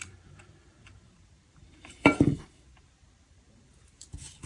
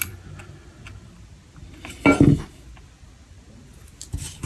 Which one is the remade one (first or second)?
first